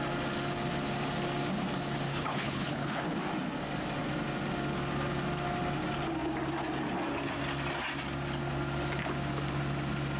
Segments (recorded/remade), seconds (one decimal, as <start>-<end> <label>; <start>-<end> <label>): 0.0-2.1 recorded; 2.1-3.0 remade; 3.0-10.2 recorded